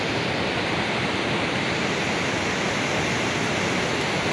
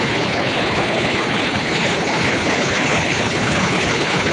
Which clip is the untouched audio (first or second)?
first